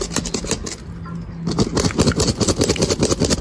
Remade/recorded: recorded